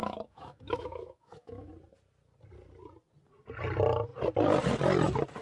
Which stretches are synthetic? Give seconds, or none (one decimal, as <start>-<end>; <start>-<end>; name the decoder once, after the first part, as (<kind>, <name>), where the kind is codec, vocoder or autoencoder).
0.0-1.7 (autoencoder, DAC-VAE)